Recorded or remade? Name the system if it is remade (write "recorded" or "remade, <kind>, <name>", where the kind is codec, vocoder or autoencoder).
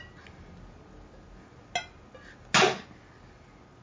recorded